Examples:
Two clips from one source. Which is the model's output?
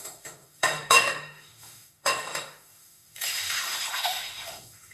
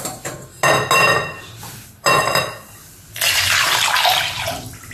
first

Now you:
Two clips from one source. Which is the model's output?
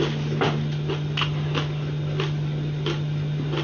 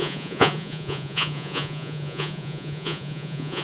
second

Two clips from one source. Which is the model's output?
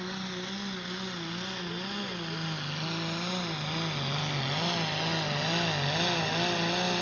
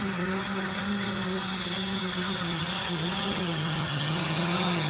second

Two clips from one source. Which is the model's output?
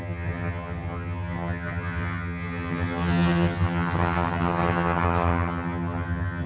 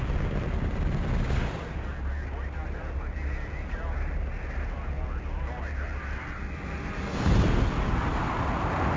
first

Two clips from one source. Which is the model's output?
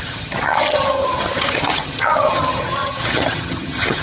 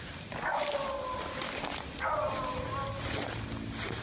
first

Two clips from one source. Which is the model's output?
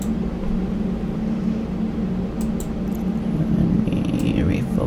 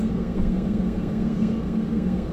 second